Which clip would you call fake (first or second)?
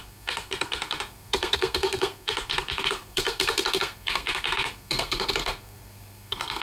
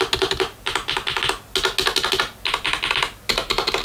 first